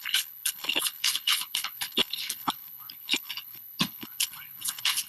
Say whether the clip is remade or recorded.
remade